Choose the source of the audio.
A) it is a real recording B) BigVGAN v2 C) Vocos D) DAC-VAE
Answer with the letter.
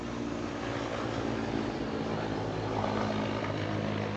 A